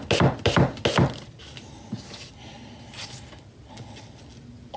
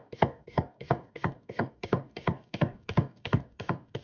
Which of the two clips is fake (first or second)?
second